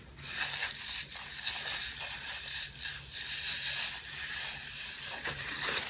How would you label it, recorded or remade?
recorded